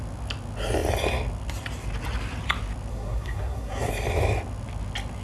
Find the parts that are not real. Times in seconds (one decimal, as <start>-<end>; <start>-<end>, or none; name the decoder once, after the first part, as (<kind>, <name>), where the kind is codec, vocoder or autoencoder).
2.9-3.9 (codec, SNAC)